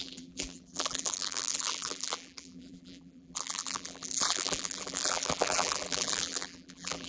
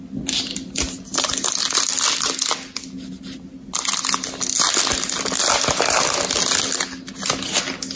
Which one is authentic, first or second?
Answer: second